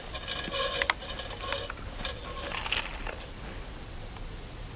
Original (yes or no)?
yes